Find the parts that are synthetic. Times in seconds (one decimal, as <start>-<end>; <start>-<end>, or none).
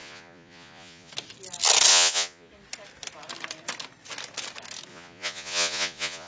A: 0.0-1.1; 1.9-2.5; 4.9-6.3